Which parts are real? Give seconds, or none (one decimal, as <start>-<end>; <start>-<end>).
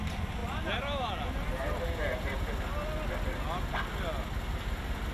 0.0-5.1